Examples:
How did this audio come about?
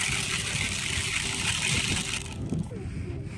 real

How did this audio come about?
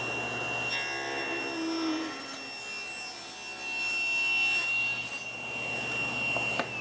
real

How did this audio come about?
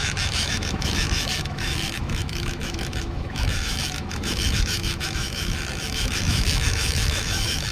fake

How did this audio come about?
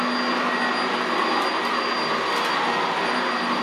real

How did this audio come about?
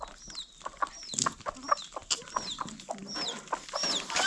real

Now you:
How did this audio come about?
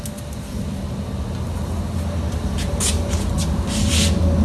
real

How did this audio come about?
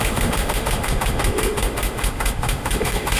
fake